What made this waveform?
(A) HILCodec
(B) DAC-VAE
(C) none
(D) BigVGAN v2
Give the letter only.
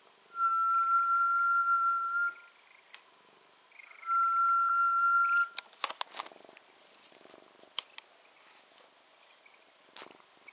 C